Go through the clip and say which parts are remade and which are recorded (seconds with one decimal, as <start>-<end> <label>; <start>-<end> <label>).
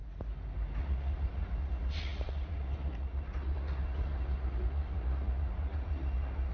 0.0-0.8 recorded; 0.8-6.5 remade